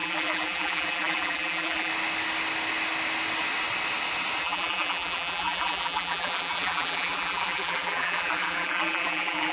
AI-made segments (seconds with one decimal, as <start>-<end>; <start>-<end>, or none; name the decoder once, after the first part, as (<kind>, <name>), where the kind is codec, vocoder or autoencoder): 0.0-1.9 (vocoder, BigVGAN v2); 4.4-9.5